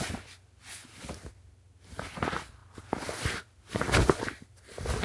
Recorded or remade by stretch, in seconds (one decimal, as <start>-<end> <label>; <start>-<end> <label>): 0.0-5.0 recorded